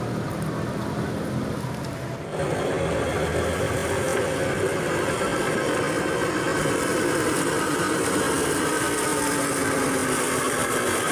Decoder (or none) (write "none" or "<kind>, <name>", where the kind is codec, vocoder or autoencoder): none